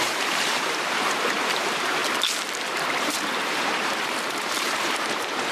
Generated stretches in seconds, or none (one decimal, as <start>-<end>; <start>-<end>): 0.0-2.0; 3.0-5.5